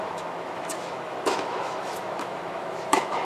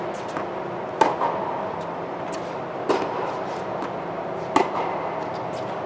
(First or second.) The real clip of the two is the second